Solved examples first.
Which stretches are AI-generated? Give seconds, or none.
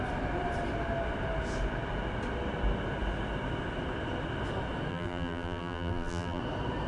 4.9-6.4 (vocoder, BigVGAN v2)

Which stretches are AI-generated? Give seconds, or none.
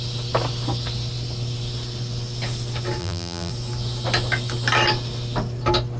3.0-3.5 (vocoder, BigVGAN v2)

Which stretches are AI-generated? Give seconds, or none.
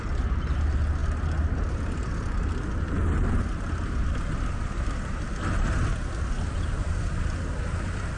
none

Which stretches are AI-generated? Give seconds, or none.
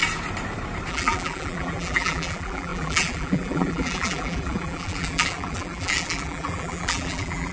0.9-7.5 (vocoder, BigVGAN v2)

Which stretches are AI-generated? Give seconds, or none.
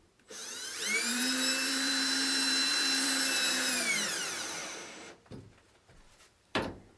0.0-4.6 (vocoder, BigVGAN v2); 6.1-7.0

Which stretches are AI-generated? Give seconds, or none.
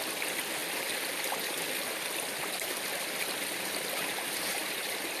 none